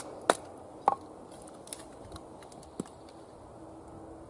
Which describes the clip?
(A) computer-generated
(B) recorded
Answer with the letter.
B